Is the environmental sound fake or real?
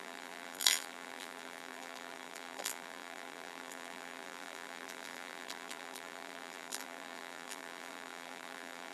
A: fake